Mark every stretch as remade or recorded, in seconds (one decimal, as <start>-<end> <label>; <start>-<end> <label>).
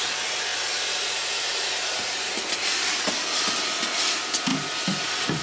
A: 0.0-5.4 recorded